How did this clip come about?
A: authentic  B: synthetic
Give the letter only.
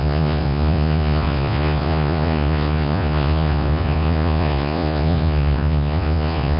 B